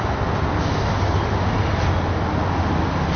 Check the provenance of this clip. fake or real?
real